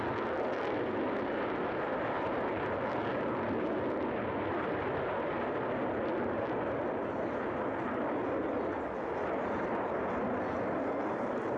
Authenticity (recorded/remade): recorded